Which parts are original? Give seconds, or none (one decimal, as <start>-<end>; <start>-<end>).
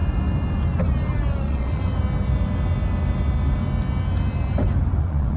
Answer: 0.0-1.4; 1.8-5.0